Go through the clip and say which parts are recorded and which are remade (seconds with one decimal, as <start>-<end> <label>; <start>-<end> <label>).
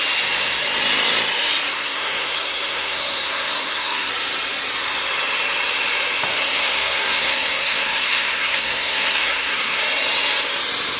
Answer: 0.0-1.7 recorded; 1.7-4.1 remade; 4.1-6.3 recorded; 6.3-9.8 remade; 9.8-11.0 recorded